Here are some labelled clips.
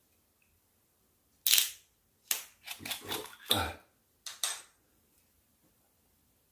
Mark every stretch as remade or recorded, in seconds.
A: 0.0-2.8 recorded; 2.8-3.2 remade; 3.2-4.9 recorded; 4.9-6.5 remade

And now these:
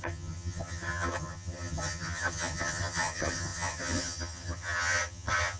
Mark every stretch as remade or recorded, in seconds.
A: 0.0-5.6 remade

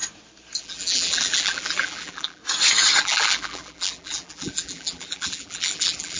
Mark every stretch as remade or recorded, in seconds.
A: 0.0-0.6 recorded; 0.6-2.4 remade; 2.4-3.0 recorded; 3.0-6.2 remade

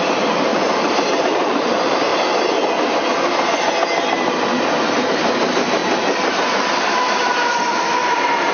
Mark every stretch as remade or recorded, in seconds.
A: 0.0-0.5 remade; 0.5-1.2 recorded; 1.2-2.1 remade; 2.1-5.1 recorded; 5.1-5.8 remade; 5.8-6.3 recorded; 6.3-8.5 remade